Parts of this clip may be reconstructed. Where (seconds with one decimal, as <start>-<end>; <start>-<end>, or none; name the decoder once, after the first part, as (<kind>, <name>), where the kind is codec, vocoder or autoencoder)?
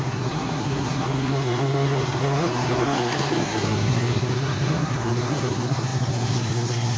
0.0-7.0 (codec, SNAC)